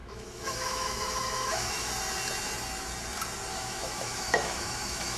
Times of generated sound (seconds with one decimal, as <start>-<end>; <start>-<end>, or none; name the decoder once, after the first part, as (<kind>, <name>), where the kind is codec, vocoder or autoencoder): 0.0-1.9 (autoencoder, DAC-VAE); 3.5-5.2